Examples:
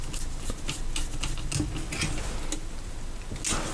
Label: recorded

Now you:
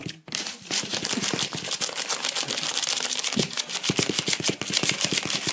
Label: recorded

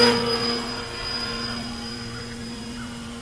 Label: remade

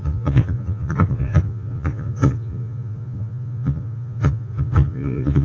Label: remade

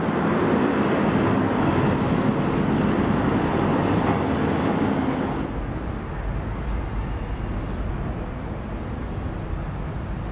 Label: recorded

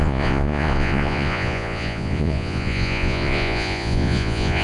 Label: remade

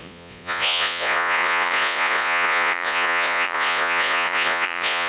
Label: remade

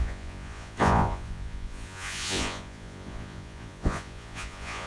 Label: remade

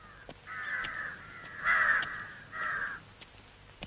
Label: recorded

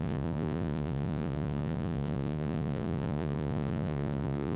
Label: remade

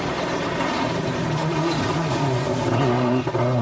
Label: recorded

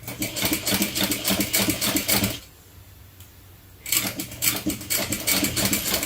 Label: recorded